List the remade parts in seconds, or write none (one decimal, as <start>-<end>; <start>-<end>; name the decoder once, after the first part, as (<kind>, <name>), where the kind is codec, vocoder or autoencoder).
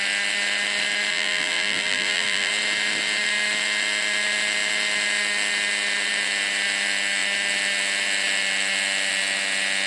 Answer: 1.1-2.5 (vocoder, BigVGAN v2)